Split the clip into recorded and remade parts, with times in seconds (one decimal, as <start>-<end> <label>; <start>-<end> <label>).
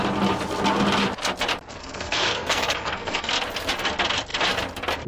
0.0-1.8 recorded; 1.8-3.3 remade; 3.3-5.1 recorded